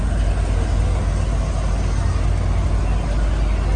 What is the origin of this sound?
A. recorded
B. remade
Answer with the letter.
A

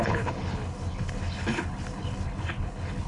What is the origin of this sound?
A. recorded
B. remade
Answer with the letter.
B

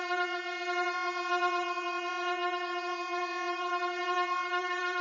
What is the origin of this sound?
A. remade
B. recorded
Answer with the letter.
A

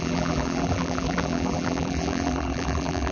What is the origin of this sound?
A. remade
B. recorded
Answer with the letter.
A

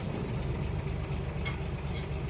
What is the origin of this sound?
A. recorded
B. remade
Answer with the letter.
A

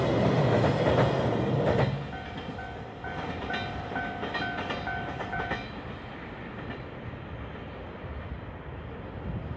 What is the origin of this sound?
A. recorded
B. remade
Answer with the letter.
A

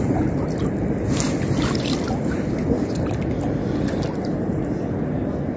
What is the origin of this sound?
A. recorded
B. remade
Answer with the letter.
A